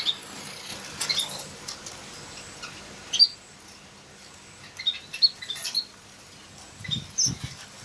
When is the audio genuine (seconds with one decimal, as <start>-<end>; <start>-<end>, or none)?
0.0-7.8